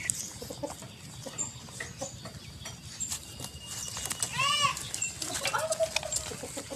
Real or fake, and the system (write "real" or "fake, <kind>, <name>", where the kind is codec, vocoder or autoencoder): real